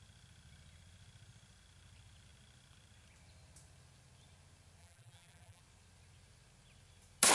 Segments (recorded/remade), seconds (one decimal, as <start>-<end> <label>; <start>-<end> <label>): 0.0-4.8 recorded; 4.8-5.6 remade; 5.6-7.3 recorded